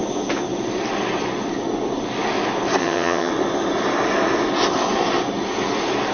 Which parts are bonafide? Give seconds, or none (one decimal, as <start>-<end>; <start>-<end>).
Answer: 0.0-2.8; 3.3-6.1